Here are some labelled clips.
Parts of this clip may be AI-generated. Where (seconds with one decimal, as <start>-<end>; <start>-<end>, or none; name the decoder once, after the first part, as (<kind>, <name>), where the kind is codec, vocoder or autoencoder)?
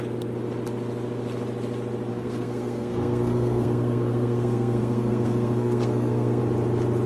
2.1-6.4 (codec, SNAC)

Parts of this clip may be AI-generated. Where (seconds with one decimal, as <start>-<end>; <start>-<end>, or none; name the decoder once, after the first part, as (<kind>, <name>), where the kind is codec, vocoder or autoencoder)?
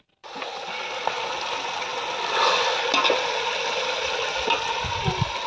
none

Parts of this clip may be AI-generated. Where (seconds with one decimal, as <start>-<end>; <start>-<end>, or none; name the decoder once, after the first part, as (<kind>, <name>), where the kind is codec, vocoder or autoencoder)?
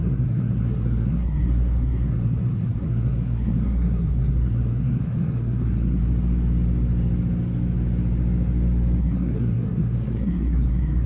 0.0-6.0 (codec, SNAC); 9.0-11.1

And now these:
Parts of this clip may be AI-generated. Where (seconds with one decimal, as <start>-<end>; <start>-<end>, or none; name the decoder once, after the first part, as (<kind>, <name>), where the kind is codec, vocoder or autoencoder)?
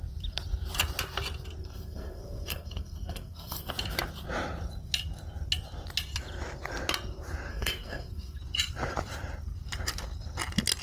1.6-3.7 (codec, SNAC); 7.5-8.4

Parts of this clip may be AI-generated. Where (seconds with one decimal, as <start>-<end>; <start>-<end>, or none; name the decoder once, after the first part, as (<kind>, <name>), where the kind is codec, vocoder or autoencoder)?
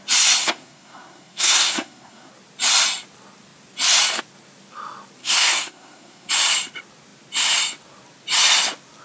0.4-2.3 (codec, SNAC); 5.2-6.3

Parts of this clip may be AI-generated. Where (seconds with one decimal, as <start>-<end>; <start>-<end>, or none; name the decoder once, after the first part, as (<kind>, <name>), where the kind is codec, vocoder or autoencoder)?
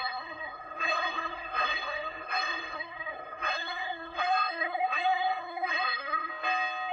0.0-6.3 (codec, SNAC)